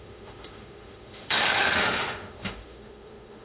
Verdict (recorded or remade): remade